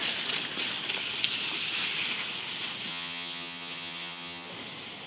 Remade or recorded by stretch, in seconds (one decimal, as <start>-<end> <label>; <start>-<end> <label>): 0.0-2.9 recorded; 2.9-4.5 remade; 4.5-5.1 recorded